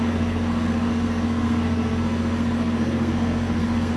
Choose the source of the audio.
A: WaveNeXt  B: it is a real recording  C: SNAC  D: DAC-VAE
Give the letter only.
C